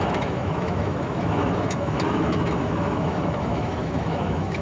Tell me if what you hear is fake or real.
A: fake